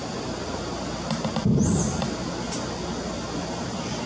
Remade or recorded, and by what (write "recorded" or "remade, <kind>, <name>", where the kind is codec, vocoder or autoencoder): recorded